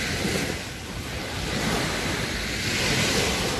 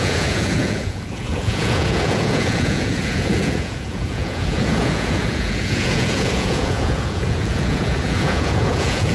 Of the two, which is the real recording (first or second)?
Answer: first